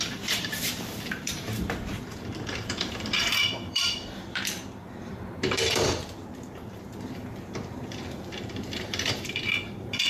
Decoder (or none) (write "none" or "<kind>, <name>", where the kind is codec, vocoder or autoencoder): vocoder, BigVGAN v2